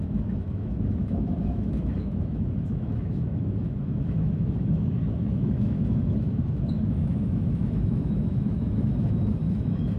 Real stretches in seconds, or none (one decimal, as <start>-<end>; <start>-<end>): none